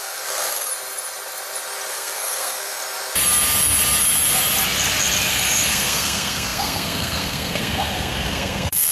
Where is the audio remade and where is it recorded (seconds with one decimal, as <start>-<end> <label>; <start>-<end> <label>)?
0.0-0.7 remade; 0.7-1.9 recorded; 1.9-2.8 remade; 2.8-5.3 recorded; 5.3-8.9 remade